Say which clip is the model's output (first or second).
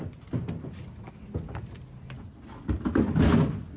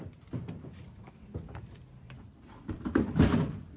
second